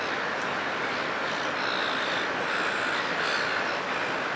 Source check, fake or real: real